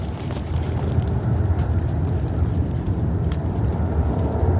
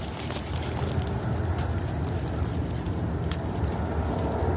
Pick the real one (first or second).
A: second